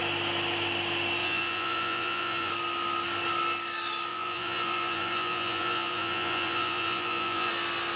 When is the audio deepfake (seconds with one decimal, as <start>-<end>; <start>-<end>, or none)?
1.2-2.5; 4.1-7.5